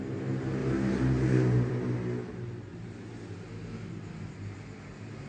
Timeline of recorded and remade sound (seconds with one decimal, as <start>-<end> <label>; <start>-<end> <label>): 0.0-5.3 recorded